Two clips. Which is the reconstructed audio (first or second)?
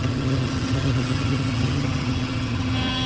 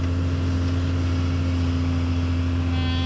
first